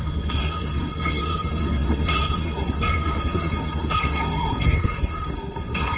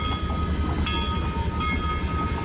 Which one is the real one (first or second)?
second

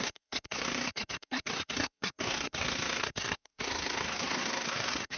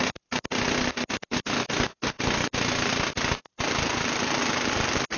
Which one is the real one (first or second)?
second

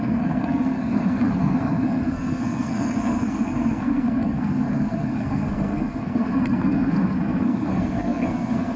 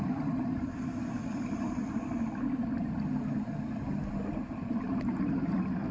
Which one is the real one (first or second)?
second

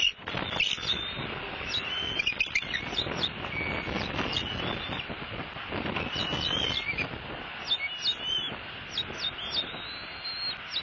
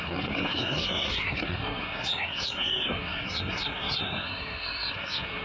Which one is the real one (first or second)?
first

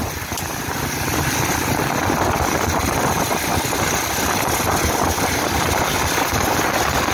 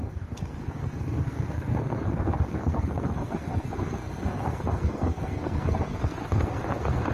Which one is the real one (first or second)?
first